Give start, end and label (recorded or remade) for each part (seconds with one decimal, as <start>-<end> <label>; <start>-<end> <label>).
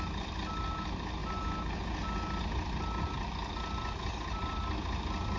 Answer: 0.0-5.4 recorded